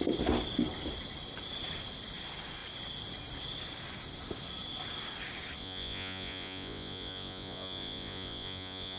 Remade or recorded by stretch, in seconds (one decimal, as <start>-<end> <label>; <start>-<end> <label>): 0.0-5.6 recorded; 5.6-9.0 remade